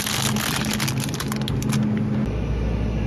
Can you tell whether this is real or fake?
real